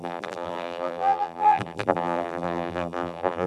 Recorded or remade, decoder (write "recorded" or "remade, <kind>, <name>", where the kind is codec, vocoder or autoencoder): remade, vocoder, BigVGAN v2